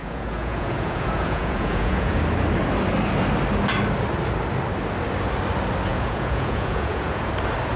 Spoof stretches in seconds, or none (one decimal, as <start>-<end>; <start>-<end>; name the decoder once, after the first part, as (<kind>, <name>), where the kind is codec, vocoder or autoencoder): 0.0-2.2 (vocoder, Vocos); 5.9-7.3